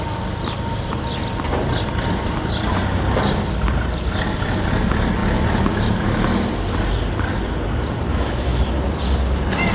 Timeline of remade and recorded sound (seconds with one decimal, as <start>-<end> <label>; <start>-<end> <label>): 0.0-8.1 recorded; 8.1-8.6 remade; 8.6-9.7 recorded